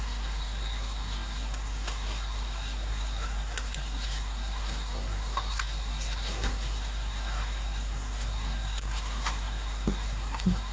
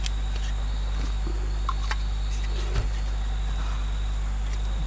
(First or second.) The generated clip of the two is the first